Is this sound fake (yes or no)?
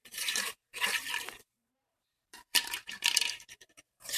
yes